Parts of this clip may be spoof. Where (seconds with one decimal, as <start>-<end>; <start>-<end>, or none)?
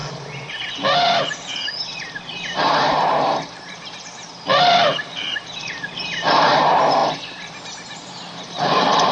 1.2-9.1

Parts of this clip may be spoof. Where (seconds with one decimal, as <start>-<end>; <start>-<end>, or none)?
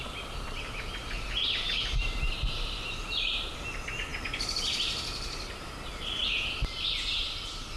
1.0-3.5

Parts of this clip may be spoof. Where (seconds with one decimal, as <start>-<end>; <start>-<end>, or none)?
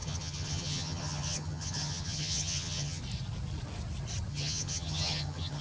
0.0-3.0; 4.3-5.6